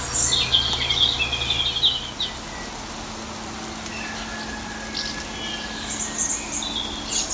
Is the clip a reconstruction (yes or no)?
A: no